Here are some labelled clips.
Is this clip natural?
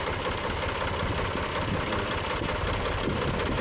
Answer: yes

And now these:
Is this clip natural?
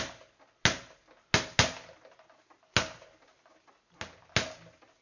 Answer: yes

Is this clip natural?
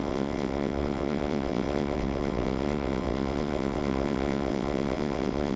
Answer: no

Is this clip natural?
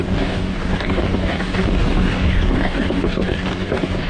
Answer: no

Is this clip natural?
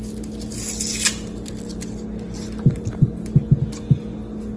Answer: yes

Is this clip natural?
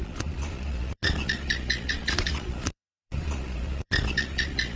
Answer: no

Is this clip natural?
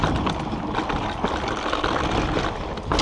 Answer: yes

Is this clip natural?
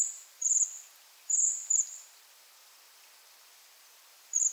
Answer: no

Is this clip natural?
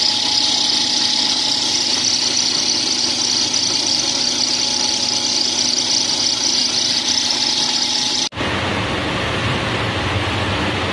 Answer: yes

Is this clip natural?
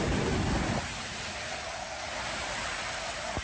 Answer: yes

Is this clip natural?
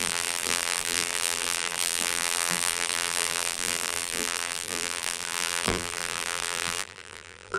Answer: no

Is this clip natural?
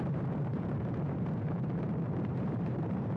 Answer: no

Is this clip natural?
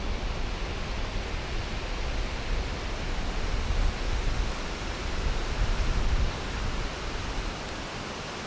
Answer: yes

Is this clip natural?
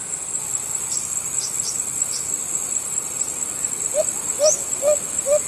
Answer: no